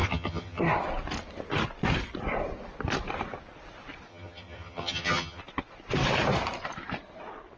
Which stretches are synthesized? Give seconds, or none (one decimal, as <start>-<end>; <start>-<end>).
0.0-0.6; 4.1-5.4